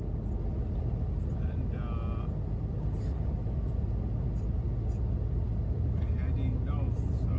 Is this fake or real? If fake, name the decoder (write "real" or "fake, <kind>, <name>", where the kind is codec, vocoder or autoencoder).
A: real